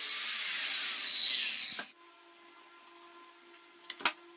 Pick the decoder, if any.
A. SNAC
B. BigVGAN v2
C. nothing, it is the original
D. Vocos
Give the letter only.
C